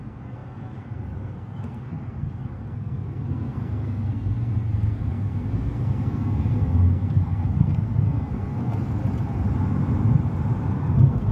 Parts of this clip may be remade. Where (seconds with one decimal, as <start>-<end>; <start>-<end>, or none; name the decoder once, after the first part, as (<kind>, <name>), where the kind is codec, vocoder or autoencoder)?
0.0-9.0 (codec, SNAC); 10.8-11.3